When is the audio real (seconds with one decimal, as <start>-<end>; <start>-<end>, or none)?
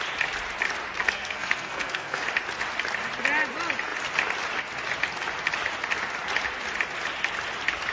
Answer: 0.0-1.0; 2.2-7.9